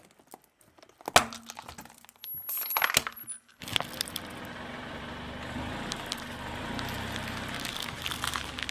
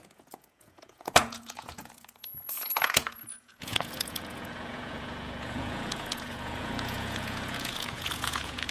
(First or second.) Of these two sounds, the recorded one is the first